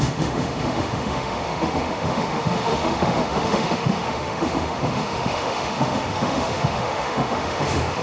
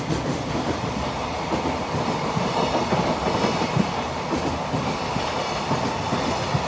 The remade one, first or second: first